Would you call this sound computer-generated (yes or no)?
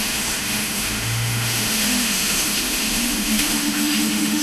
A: yes